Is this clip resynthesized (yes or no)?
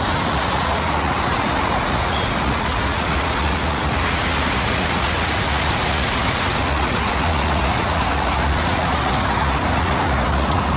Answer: yes